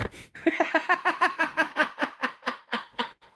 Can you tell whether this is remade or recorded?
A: remade